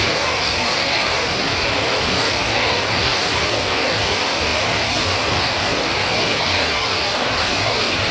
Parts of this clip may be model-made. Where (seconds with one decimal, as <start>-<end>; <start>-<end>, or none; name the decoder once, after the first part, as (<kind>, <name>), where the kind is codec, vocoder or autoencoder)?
0.0-8.1 (codec, DAC)